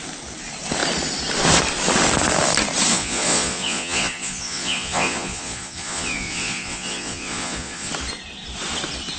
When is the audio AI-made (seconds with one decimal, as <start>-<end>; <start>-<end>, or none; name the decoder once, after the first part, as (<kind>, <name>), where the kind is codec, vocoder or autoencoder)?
2.9-7.9 (vocoder, Vocos)